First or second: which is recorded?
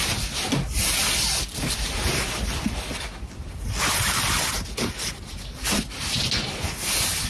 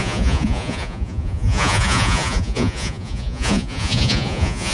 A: first